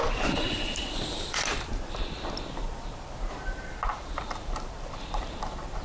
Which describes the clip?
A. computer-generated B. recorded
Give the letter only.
B